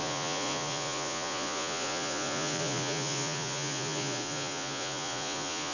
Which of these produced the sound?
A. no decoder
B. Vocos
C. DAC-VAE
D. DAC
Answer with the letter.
B